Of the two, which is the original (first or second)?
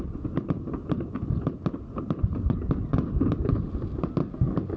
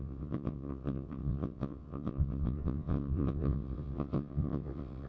first